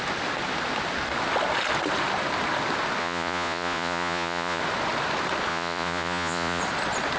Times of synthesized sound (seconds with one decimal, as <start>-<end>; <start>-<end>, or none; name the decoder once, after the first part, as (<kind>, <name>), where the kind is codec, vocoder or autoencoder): 3.0-4.6 (vocoder, Vocos); 5.5-6.6